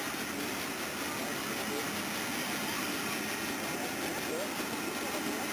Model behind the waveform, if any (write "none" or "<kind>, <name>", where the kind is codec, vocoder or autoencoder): none